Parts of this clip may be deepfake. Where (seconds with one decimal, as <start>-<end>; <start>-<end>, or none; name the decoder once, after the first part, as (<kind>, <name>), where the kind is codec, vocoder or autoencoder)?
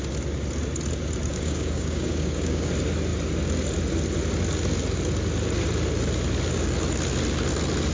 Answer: 1.3-2.7 (codec, DAC)